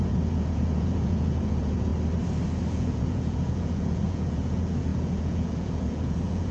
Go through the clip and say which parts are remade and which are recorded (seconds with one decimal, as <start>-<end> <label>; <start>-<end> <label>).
0.0-1.9 remade; 1.9-2.7 recorded; 2.7-6.5 remade